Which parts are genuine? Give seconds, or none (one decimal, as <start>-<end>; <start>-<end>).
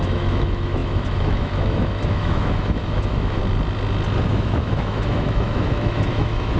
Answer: 3.4-4.3